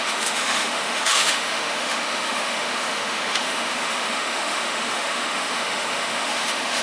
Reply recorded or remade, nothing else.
remade